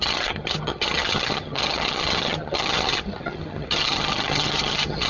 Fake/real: fake